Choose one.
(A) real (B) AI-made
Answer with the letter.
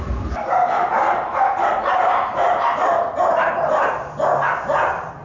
B